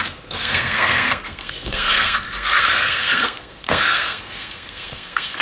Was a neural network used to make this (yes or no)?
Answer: yes